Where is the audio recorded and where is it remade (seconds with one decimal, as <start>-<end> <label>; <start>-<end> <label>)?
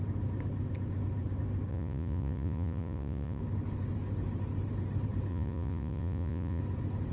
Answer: 0.0-1.7 recorded; 1.7-3.4 remade; 3.4-5.3 recorded; 5.3-6.6 remade; 6.6-7.1 recorded